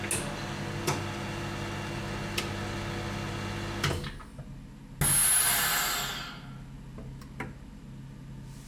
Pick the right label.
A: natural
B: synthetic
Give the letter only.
A